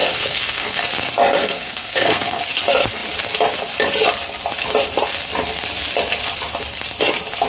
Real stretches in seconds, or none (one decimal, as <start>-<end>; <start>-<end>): 0.8-1.4; 2.4-7.5